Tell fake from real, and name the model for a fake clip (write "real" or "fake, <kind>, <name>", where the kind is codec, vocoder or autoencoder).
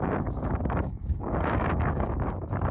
fake, codec, DAC